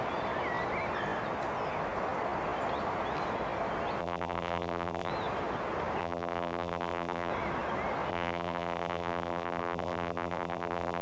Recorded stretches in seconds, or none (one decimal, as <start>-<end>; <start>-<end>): 0.0-4.0; 5.1-6.0; 7.3-8.1